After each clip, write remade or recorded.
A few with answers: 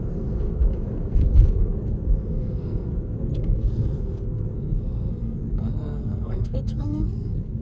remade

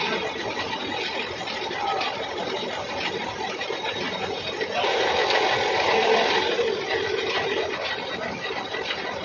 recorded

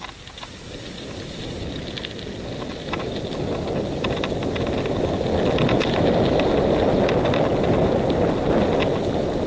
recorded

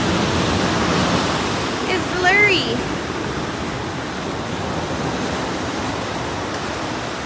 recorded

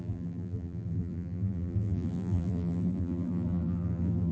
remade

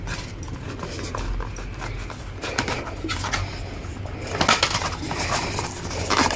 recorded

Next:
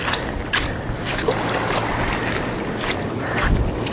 recorded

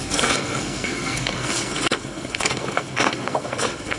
remade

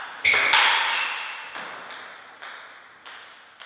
recorded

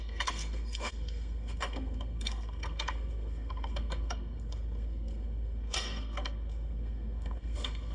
remade